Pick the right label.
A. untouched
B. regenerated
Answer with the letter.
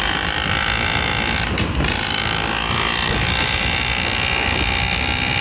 A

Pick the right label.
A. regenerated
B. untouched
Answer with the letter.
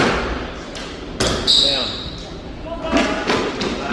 B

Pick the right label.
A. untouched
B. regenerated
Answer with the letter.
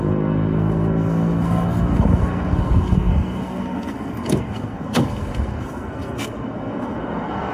B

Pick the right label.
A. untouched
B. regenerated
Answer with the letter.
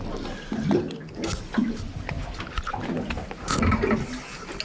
A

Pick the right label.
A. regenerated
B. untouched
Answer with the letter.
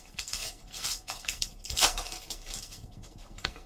A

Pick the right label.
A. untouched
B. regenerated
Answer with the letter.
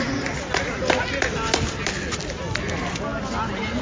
A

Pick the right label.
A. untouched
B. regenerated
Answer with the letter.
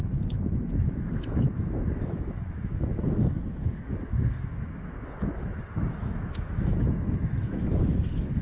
B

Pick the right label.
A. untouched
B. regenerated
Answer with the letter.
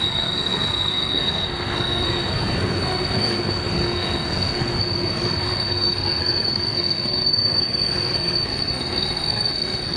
B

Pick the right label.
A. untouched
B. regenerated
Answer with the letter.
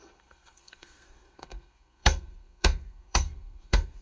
B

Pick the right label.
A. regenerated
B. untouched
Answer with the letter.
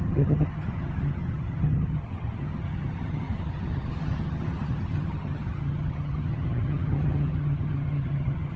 A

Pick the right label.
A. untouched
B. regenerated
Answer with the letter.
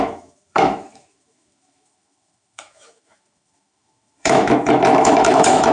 B